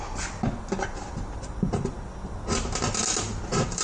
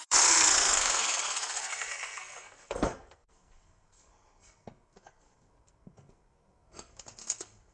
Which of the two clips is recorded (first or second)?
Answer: first